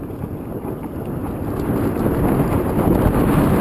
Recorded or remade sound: recorded